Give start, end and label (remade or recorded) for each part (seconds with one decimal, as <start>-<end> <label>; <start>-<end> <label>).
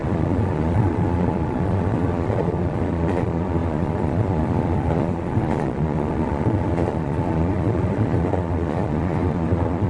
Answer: 0.0-9.9 remade